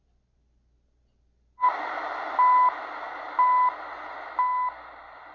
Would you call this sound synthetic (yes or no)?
no